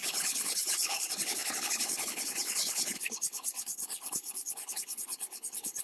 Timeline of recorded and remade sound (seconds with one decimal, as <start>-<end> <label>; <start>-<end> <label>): 0.0-5.8 remade